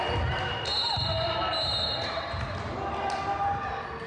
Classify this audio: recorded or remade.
recorded